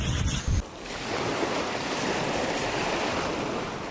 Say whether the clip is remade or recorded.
recorded